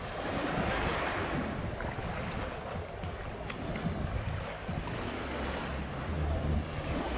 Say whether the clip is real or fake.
real